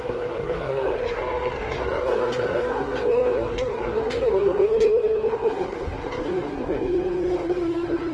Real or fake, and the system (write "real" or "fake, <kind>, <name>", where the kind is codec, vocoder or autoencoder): fake, codec, SNAC